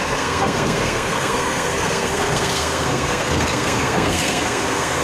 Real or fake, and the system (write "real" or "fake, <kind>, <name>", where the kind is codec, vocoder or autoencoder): fake, codec, SNAC